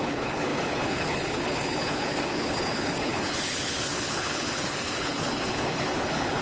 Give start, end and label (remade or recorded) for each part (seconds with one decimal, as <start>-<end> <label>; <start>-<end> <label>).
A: 0.0-6.4 remade